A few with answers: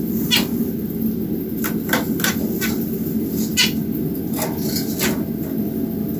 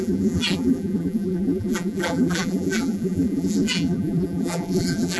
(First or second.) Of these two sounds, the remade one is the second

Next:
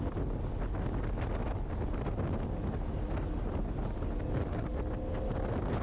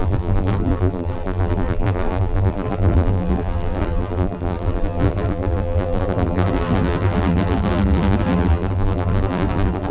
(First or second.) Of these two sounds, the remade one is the second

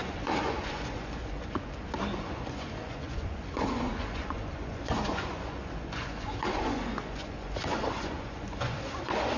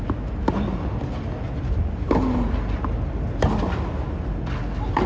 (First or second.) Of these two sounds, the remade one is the first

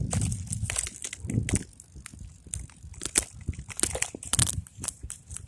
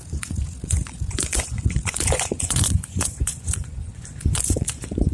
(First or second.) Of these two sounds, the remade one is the second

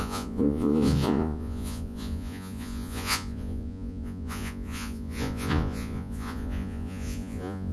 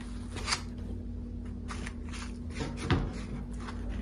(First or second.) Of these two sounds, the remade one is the first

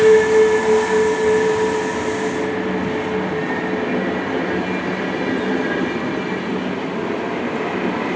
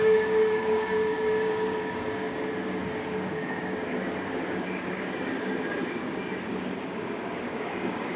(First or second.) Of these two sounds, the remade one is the second